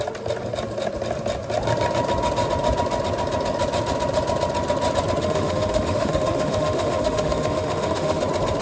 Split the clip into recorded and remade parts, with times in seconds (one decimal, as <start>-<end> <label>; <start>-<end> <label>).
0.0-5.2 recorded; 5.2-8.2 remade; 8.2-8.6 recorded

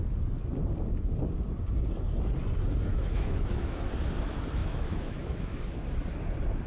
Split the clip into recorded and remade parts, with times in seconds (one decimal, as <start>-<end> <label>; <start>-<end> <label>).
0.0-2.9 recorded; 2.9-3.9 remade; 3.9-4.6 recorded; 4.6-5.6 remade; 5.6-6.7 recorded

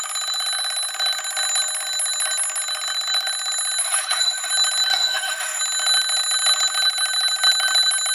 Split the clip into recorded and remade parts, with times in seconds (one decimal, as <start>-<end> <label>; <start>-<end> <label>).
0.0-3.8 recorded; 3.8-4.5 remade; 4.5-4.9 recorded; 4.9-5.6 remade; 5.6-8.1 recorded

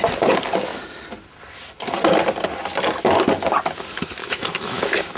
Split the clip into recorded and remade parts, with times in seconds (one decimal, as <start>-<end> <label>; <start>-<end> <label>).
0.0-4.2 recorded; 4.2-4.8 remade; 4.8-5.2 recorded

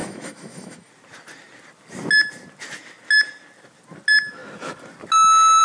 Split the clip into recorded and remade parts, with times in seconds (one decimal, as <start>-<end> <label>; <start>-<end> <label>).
0.0-0.9 remade; 0.9-5.6 recorded

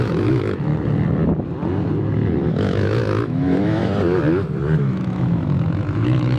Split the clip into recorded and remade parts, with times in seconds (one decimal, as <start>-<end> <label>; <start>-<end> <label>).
0.0-0.7 remade; 0.7-2.5 recorded; 2.5-3.8 remade; 3.8-4.8 recorded; 4.8-6.4 remade